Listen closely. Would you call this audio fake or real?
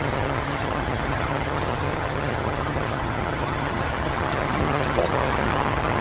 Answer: fake